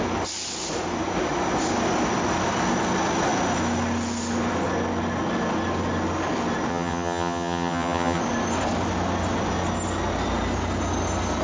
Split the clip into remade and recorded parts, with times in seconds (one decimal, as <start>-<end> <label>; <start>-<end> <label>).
0.0-6.7 recorded; 6.7-8.2 remade; 8.2-11.4 recorded